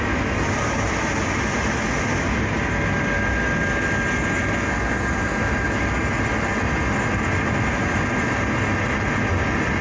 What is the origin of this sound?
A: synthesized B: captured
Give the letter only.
B